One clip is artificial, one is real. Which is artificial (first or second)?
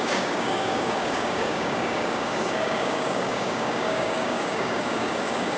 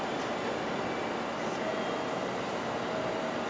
first